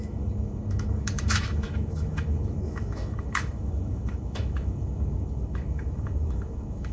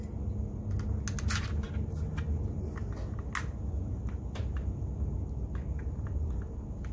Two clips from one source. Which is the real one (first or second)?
second